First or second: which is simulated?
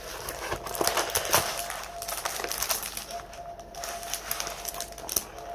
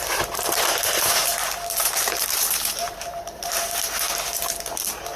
second